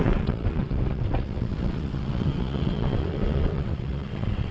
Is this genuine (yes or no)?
no